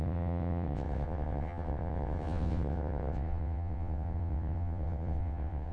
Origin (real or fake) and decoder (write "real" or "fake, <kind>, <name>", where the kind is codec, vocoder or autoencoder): fake, vocoder, WaveNeXt